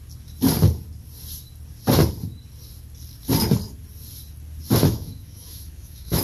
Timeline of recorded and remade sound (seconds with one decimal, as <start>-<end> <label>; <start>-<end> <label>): 0.0-4.8 recorded; 4.8-6.2 remade